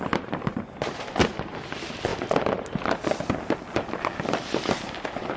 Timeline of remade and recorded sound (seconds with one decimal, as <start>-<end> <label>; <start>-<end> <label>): 0.0-5.4 recorded